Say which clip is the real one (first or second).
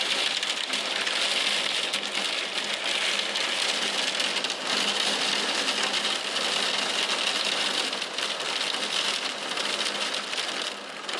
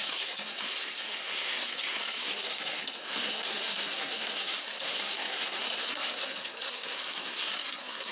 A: first